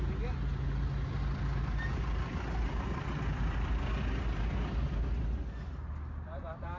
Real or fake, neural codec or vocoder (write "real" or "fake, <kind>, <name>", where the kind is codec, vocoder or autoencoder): real